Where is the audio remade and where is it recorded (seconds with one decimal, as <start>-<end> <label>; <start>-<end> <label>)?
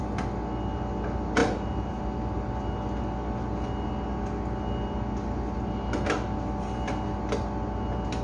0.0-1.4 recorded; 1.4-2.0 remade; 2.0-8.2 recorded